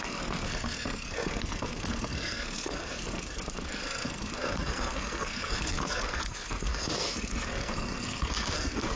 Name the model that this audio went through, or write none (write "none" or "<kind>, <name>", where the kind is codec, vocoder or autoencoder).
codec, SNAC